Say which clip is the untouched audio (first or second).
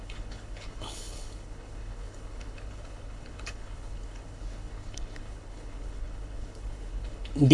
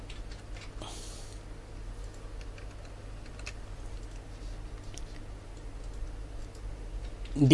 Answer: second